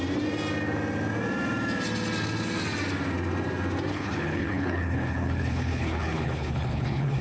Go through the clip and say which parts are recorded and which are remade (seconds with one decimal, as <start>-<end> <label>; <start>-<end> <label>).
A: 0.0-3.9 recorded; 3.9-7.2 remade